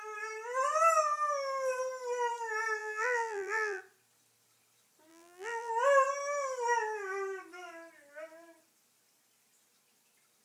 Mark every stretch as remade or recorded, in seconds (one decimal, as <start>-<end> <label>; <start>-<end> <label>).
0.0-2.8 recorded; 2.8-3.8 remade; 3.8-5.1 recorded; 5.1-5.7 remade; 5.7-10.4 recorded